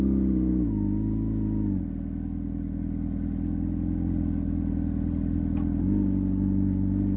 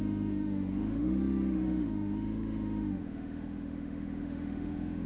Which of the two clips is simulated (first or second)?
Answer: second